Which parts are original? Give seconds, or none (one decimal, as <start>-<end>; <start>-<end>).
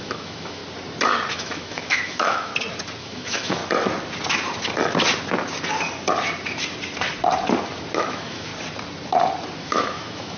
0.6-1.3; 2.5-3.0; 3.6-8.0; 8.5-9.6